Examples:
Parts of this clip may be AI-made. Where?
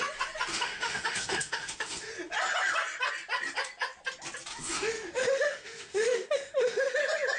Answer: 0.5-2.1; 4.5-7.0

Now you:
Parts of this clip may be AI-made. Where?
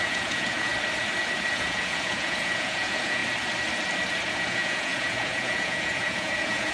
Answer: 0.0-0.7; 1.5-3.2; 4.3-6.7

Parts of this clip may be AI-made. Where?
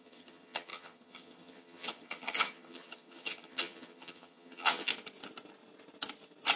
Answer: 0.0-4.9